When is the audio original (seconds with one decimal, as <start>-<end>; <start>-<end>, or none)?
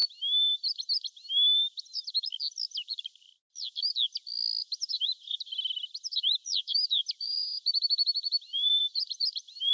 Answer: 0.0-4.6; 5.7-6.5